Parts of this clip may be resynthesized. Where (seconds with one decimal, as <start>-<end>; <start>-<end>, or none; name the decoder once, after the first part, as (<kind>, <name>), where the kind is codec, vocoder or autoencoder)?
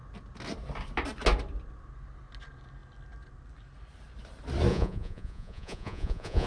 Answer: 4.7-6.5 (vocoder, Vocos)